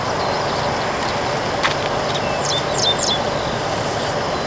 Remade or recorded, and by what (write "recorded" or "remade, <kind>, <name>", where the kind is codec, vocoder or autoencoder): recorded